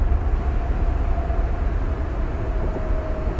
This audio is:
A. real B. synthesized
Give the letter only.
A